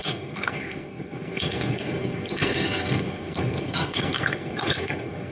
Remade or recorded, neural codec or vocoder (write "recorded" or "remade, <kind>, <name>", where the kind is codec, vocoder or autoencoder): remade, codec, SNAC